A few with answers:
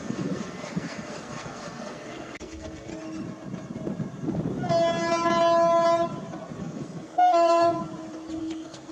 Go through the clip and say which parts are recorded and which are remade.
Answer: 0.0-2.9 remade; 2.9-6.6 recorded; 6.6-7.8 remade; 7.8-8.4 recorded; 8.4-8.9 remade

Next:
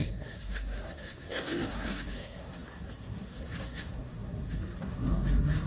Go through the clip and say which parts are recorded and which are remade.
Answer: 0.0-5.7 remade

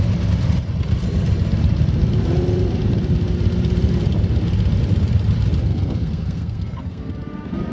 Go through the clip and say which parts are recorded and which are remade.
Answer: 0.0-5.6 recorded; 5.6-7.1 remade; 7.1-7.7 recorded

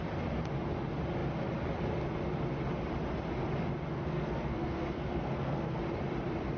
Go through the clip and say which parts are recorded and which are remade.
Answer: 0.0-3.9 recorded; 3.9-5.8 remade; 5.8-6.6 recorded

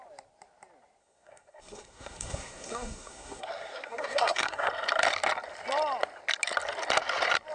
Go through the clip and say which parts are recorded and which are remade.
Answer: 0.0-1.0 recorded; 1.0-4.7 remade; 4.7-7.5 recorded

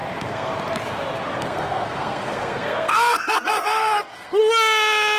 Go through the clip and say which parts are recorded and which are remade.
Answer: 0.0-0.5 remade; 0.5-1.3 recorded; 1.3-4.4 remade; 4.4-5.2 recorded